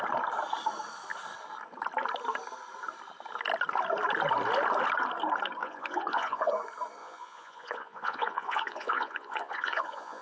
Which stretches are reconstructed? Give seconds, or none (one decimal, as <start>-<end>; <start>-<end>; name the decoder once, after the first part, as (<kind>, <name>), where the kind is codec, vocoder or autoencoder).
5.6-6.5 (vocoder, Vocos); 7.0-10.2

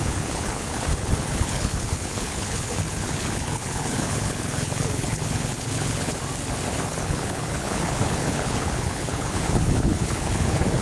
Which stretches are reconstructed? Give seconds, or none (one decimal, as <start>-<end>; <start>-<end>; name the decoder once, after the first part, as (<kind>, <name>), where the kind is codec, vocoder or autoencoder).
0.0-6.2 (codec, HILCodec); 6.7-10.8

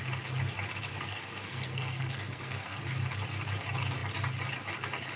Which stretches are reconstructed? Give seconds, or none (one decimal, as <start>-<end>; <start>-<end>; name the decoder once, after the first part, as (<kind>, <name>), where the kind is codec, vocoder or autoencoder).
0.9-2.8 (codec, SNAC)